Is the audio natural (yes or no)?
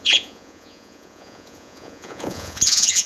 no